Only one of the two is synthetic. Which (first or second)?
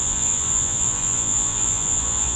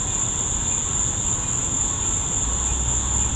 first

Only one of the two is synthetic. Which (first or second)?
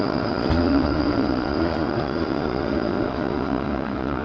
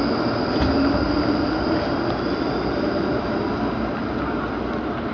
first